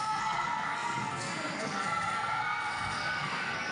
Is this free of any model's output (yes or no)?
no